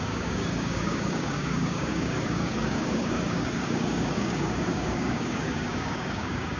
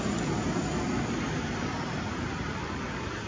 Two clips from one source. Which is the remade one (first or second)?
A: first